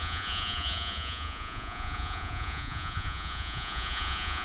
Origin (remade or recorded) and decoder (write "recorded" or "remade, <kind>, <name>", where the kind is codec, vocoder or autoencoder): remade, vocoder, Vocos